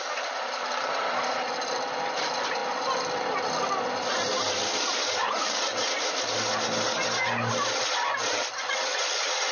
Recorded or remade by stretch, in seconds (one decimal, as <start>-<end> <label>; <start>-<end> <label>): 0.0-9.5 recorded